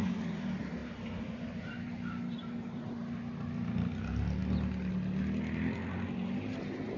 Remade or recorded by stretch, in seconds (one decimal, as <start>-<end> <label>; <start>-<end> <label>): 0.0-7.0 recorded